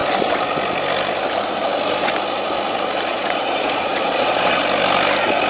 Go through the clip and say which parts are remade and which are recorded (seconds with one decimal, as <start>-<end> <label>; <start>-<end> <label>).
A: 0.0-3.1 recorded; 3.1-4.6 remade; 4.6-5.5 recorded